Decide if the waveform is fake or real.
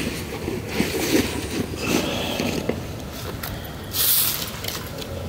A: real